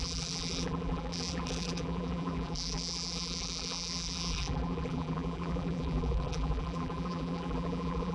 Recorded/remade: remade